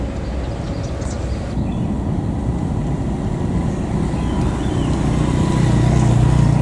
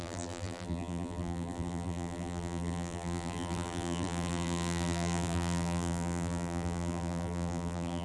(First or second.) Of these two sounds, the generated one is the second